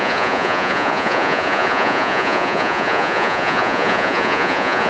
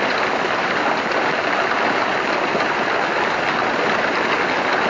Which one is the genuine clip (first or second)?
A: second